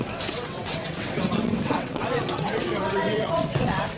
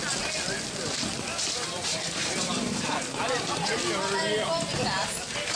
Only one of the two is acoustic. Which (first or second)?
second